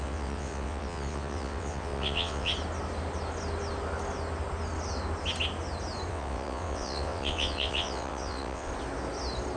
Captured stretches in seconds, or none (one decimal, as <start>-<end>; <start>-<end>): 2.5-6.1; 8.7-9.6